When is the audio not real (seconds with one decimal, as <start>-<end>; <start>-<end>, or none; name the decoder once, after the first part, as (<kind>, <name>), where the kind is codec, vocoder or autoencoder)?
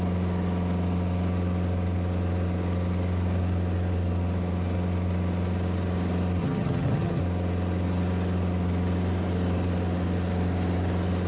6.4-7.2 (vocoder, HiFi-GAN)